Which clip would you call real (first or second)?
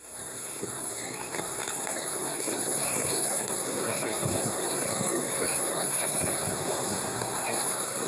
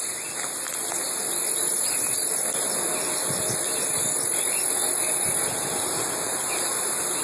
second